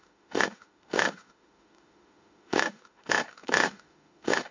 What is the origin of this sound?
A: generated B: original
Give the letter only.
A